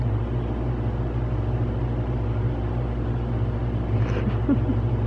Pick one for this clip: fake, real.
real